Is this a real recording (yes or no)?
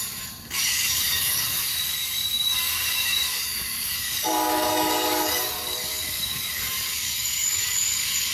no